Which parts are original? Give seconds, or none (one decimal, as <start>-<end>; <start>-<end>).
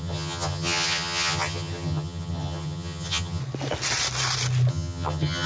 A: 3.4-4.7